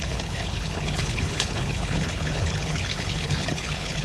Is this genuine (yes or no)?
no